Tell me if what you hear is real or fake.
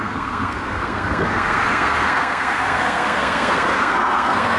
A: fake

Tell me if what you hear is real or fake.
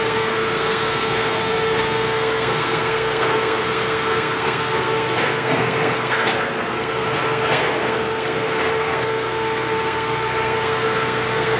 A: fake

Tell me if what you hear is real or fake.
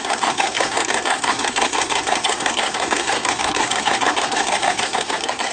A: fake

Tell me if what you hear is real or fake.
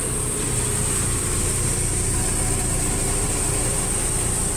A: real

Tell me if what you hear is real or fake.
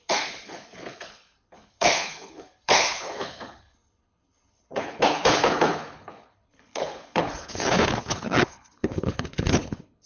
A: fake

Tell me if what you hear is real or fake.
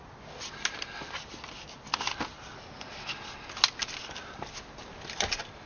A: real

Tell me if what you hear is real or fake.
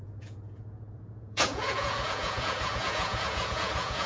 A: fake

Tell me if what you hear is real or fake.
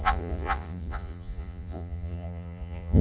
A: fake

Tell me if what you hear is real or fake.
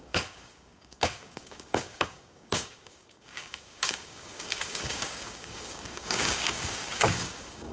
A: fake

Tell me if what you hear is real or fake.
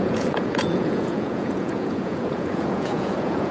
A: fake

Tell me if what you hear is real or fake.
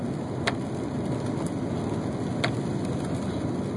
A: real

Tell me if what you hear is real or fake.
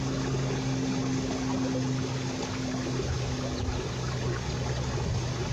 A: real